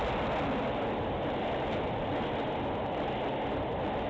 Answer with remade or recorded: recorded